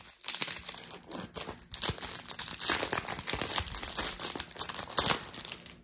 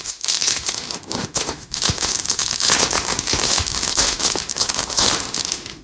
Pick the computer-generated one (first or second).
second